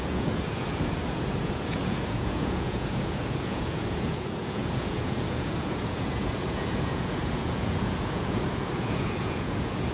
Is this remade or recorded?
remade